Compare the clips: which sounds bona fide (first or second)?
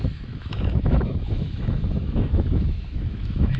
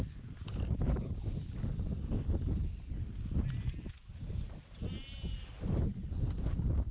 second